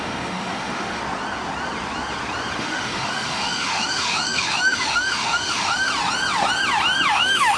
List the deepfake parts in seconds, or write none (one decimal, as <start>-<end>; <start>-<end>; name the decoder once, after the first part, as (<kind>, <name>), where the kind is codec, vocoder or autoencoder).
0.0-1.0 (autoencoder, DAC-VAE); 2.6-5.9; 7.1-7.6